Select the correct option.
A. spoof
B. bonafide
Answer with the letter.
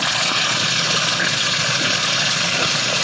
A